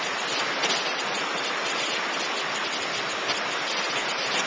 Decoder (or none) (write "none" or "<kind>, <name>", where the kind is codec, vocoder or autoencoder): none